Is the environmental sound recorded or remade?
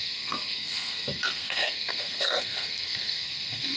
remade